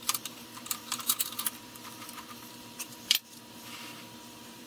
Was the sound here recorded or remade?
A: remade